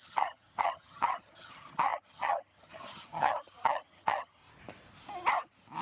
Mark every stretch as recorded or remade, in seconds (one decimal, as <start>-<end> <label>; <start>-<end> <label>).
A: 0.0-4.4 remade; 4.4-5.8 recorded